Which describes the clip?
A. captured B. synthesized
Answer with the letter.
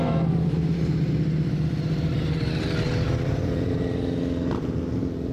A